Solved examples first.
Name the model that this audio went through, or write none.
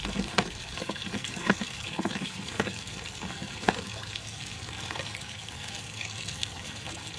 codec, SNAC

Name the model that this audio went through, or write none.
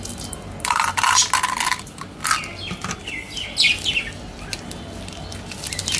none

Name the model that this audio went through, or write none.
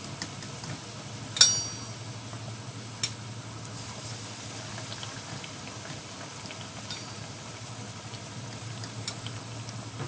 none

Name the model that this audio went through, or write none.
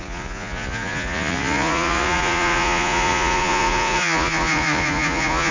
vocoder, Vocos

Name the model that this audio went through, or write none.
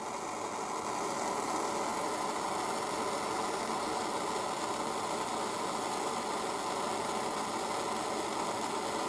none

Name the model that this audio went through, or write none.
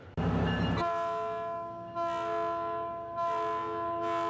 none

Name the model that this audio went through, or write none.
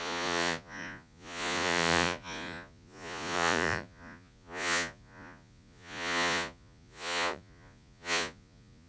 vocoder, Vocos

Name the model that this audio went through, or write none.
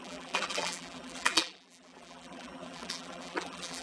vocoder, BigVGAN v2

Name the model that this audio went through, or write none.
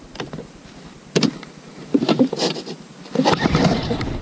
vocoder, BigVGAN v2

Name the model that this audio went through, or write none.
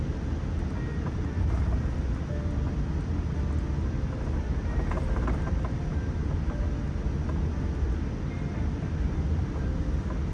none